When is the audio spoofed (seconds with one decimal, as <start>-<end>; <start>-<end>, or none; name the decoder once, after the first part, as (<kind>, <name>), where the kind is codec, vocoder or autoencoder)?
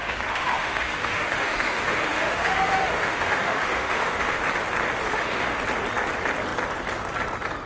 0.0-4.4 (autoencoder, DAC-VAE); 5.1-5.6